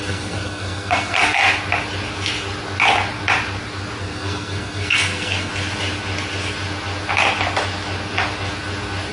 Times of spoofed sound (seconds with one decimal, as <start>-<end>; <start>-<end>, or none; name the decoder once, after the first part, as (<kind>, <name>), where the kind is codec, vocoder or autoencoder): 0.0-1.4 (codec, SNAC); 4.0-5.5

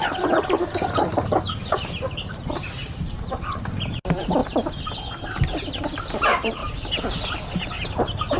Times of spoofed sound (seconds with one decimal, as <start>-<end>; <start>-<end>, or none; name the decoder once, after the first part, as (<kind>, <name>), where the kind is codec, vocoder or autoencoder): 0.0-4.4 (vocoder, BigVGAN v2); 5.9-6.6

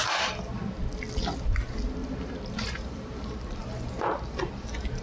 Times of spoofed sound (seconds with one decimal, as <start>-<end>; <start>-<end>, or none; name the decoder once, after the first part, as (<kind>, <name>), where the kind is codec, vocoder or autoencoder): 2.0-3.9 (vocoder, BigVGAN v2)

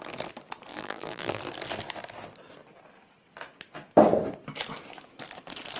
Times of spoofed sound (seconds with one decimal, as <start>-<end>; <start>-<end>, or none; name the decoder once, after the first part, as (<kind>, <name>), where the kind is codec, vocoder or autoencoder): 0.7-1.4 (vocoder, BigVGAN v2)